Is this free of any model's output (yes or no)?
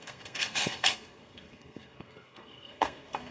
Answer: no